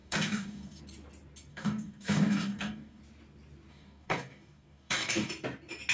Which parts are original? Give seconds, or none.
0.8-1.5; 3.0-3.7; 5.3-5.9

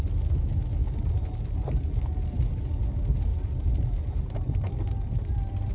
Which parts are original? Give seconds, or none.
0.0-5.7

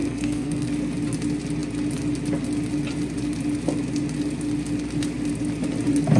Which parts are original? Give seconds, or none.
0.7-6.2

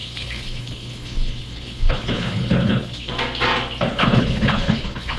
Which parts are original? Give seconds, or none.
3.1-3.9

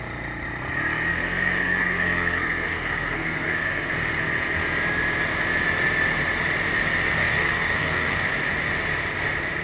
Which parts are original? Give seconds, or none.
0.0-1.1; 3.9-7.2; 8.2-9.6

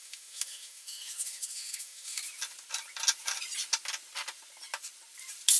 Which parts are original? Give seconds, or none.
2.2-5.6

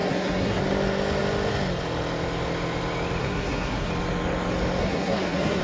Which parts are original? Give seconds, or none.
0.6-3.2; 3.9-4.8